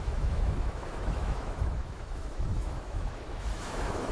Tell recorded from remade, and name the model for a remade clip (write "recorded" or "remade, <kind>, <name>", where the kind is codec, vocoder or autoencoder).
remade, autoencoder, DAC-VAE